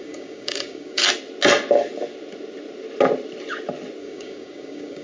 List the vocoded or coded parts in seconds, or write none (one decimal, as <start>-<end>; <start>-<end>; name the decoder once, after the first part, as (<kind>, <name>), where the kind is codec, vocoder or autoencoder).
0.0-1.0 (codec, DAC); 4.0-5.0